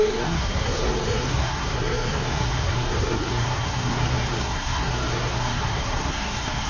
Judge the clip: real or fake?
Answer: fake